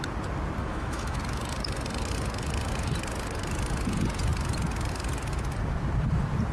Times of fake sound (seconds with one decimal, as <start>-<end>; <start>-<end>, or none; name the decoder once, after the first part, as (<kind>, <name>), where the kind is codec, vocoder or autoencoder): 0.6-1.2 (autoencoder, DAC-VAE)